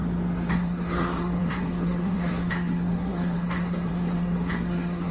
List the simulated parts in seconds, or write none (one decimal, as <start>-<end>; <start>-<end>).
0.5-5.1